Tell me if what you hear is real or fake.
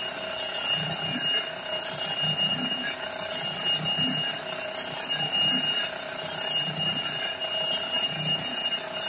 real